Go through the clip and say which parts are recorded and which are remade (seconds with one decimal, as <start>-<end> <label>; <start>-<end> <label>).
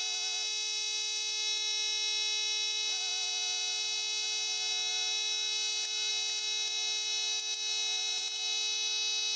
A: 0.0-9.4 recorded